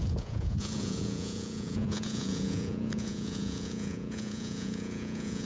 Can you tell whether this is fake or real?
fake